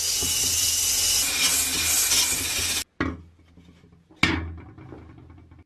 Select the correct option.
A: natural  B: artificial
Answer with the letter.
A